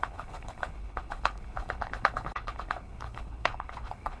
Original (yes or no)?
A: no